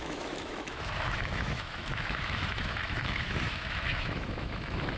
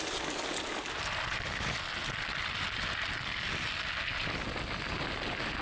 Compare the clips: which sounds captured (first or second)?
second